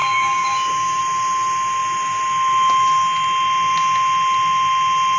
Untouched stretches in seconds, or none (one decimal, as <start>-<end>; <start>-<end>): 1.0-5.2